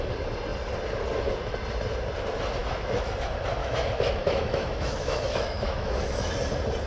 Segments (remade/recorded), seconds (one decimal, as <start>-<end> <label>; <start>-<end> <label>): 0.0-2.6 recorded; 2.6-3.1 remade; 3.1-3.6 recorded; 3.6-6.3 remade; 6.3-6.9 recorded